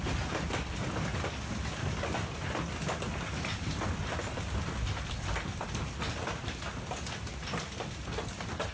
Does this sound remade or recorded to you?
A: recorded